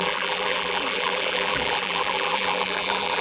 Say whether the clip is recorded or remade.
remade